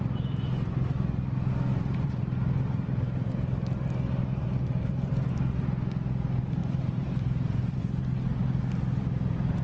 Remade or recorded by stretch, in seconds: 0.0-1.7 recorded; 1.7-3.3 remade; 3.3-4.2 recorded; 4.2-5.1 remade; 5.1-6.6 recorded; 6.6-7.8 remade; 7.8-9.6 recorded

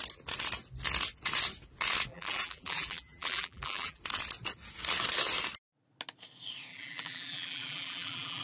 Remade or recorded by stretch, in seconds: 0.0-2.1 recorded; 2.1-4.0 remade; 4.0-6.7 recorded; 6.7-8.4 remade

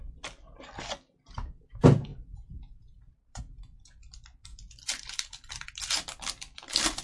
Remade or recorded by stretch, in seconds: 0.0-2.1 recorded; 2.1-3.4 remade; 3.4-4.5 recorded; 4.5-5.7 remade; 5.7-7.0 recorded

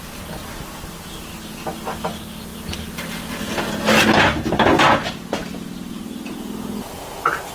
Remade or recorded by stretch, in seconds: 0.0-7.5 recorded

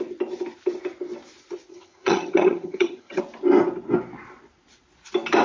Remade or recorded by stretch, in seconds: 0.0-1.7 recorded; 1.7-3.2 remade; 3.2-5.4 recorded